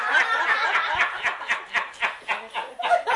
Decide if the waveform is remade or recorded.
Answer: recorded